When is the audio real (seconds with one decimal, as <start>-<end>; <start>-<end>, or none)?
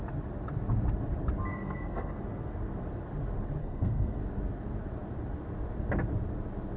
0.0-1.5; 2.1-3.6; 4.2-6.8